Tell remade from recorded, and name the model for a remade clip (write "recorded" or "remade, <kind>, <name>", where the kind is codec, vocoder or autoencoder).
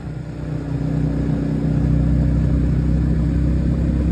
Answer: recorded